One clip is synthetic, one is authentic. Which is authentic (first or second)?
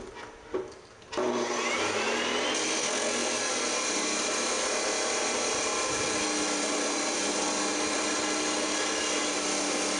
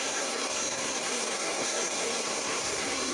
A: first